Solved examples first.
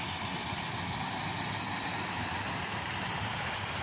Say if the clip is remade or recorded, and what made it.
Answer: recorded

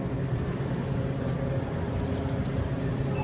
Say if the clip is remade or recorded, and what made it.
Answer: recorded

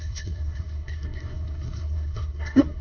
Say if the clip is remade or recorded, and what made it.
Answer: remade, codec, SNAC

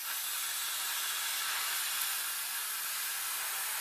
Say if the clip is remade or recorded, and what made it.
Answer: recorded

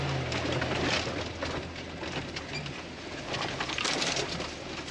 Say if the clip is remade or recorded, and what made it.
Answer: recorded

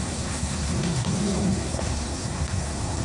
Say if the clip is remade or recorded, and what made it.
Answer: remade, codec, SNAC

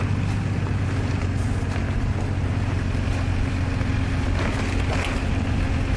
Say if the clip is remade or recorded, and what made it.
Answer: recorded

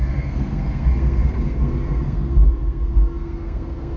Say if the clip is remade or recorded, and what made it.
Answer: remade, codec, SNAC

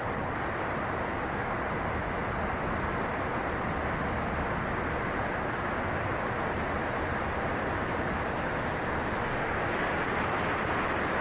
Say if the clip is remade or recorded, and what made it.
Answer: recorded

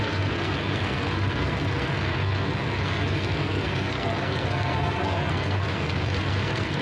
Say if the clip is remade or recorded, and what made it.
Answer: remade, codec, SNAC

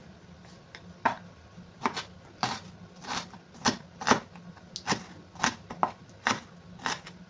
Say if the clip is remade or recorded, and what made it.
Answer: recorded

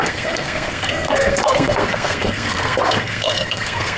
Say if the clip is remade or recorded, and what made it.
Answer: remade, codec, SNAC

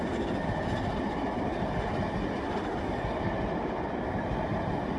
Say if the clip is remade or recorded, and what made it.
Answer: recorded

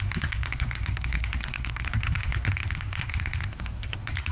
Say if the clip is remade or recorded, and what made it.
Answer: remade, codec, SNAC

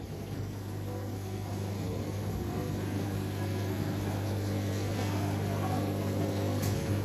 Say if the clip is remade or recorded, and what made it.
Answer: remade, codec, SNAC